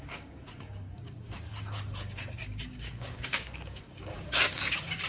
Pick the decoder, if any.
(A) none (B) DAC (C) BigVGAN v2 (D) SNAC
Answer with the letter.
B